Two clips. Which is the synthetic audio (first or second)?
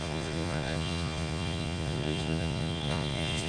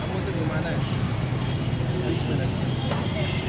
first